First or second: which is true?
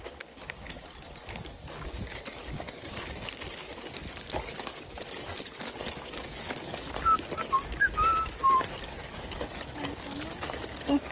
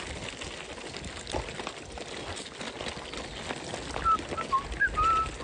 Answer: second